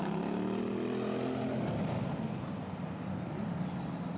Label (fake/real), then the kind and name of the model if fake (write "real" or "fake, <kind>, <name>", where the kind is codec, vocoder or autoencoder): real